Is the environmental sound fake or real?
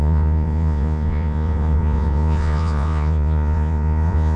fake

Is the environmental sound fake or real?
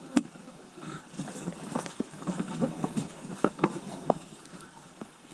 fake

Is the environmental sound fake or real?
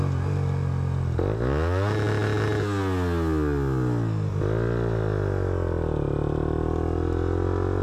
real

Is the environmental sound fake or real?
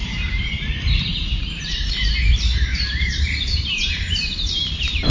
fake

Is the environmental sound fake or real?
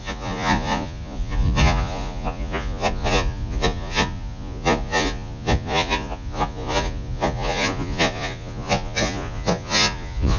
fake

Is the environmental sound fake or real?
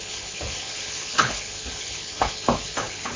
fake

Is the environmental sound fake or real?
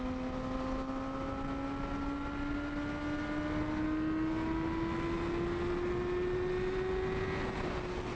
real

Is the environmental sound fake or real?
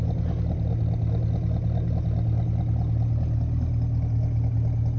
real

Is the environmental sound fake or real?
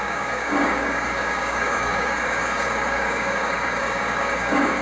fake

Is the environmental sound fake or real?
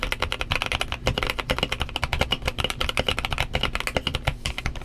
real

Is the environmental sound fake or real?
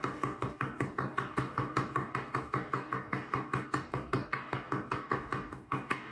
fake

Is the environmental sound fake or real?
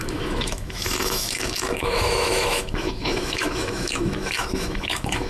fake